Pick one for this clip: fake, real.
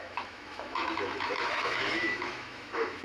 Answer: fake